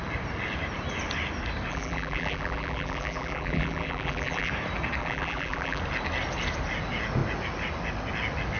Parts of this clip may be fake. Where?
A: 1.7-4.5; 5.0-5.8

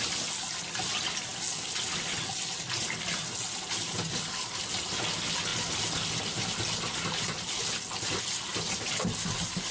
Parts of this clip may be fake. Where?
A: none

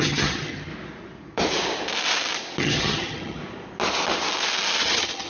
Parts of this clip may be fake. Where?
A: 0.0-0.7; 2.6-3.4; 4.8-5.3

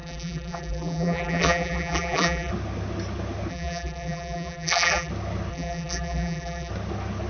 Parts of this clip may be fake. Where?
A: 0.0-2.5; 3.5-5.1; 5.5-6.7